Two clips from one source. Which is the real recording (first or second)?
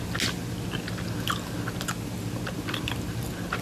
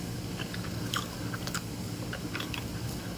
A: first